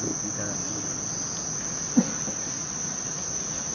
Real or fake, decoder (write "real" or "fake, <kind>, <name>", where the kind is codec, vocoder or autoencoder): real